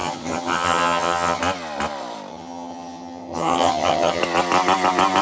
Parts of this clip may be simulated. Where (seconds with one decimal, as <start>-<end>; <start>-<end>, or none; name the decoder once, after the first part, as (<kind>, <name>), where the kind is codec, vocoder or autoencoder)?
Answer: 0.0-1.4 (vocoder, HiFi-GAN); 2.3-4.2